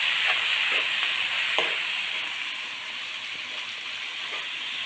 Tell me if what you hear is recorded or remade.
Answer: recorded